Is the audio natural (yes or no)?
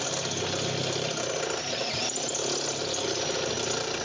yes